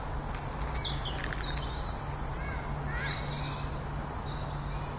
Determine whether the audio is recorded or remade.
recorded